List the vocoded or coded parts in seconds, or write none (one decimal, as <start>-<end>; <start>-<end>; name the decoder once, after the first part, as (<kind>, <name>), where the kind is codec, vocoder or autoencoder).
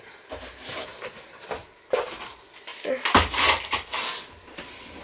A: none